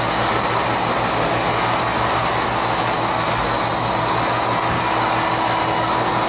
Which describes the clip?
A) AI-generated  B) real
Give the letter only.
B